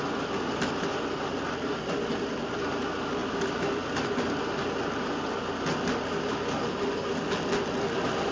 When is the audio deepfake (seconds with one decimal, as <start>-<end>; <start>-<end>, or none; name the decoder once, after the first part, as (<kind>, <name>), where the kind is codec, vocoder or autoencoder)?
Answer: none